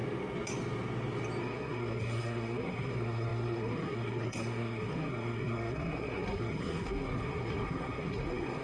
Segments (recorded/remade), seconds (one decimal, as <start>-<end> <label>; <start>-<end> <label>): 0.0-1.4 recorded; 1.4-8.6 remade